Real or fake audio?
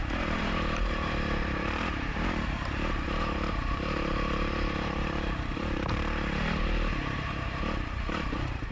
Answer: fake